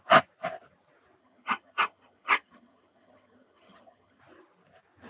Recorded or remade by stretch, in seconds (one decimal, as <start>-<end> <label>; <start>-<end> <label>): 0.0-1.2 recorded; 1.2-4.2 remade; 4.2-5.1 recorded